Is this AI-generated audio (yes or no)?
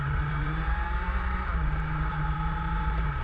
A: yes